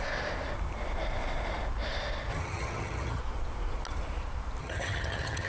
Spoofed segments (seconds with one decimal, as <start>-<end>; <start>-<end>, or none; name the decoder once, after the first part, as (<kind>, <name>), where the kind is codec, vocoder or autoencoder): 2.3-3.2 (vocoder, HiFi-GAN); 4.6-5.5